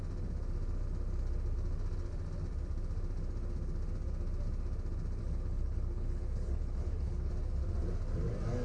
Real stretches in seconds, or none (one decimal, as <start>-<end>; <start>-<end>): 0.0-5.2; 7.3-8.6